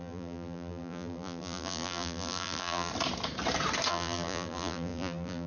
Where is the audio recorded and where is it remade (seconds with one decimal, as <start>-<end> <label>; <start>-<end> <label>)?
0.0-2.9 remade; 2.9-3.9 recorded; 3.9-5.5 remade